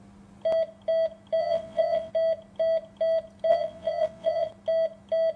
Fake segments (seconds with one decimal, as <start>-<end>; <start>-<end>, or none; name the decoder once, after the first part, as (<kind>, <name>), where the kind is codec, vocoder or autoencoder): 1.4-2.1 (vocoder, WaveNeXt); 3.5-4.5